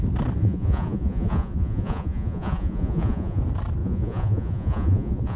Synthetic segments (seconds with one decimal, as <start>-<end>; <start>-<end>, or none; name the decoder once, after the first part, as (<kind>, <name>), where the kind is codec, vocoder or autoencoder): 0.4-3.4 (vocoder, Vocos); 3.8-5.4